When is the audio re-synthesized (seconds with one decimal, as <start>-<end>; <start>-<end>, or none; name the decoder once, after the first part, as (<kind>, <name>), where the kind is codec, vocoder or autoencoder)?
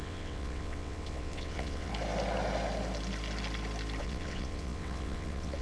0.0-1.9 (vocoder, WaveNeXt); 4.0-5.6